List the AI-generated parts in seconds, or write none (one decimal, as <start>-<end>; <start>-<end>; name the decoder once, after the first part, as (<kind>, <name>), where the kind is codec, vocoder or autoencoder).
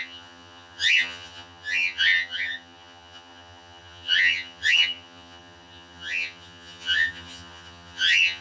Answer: 0.0-8.4 (vocoder, HiFi-GAN)